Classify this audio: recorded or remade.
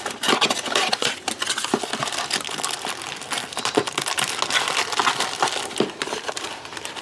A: recorded